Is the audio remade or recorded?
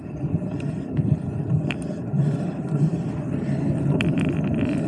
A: recorded